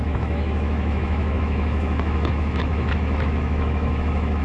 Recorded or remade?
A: remade